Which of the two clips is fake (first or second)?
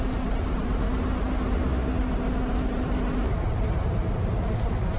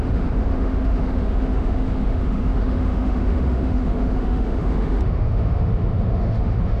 second